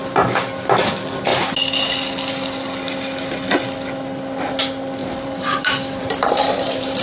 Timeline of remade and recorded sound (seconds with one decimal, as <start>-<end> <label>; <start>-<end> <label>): 0.0-5.0 recorded; 5.0-5.6 remade; 5.6-6.0 recorded; 6.0-7.0 remade